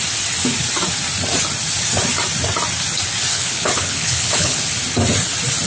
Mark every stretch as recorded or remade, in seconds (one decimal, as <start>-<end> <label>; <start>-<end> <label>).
0.0-3.3 recorded; 3.3-4.6 remade; 4.6-5.7 recorded